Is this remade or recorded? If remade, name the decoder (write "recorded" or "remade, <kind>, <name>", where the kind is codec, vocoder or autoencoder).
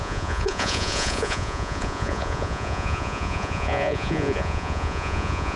remade, vocoder, Vocos